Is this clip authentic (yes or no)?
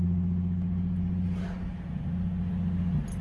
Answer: yes